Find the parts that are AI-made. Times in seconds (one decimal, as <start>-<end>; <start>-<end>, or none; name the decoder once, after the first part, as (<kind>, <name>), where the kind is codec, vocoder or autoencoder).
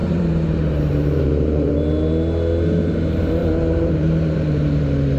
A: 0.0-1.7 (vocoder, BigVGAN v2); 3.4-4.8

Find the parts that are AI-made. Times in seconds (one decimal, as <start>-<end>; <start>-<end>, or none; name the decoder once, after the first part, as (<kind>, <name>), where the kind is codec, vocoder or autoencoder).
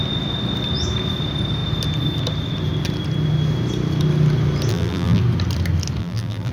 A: 4.7-5.2 (vocoder, BigVGAN v2); 6.0-6.5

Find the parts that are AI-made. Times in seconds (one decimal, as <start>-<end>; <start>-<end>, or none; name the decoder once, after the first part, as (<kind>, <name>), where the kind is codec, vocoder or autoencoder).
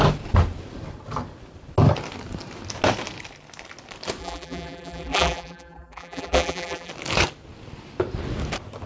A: 4.2-6.9 (vocoder, BigVGAN v2)